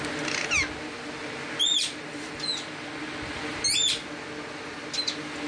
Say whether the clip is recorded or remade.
recorded